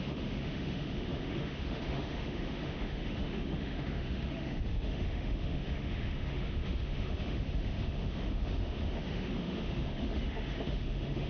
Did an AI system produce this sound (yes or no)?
yes